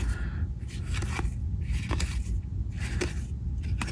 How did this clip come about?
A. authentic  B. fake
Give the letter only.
A